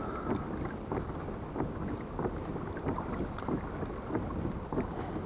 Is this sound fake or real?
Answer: real